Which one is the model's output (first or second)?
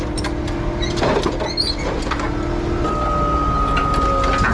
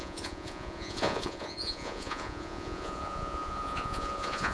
second